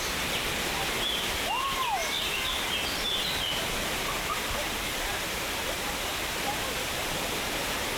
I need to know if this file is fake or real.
real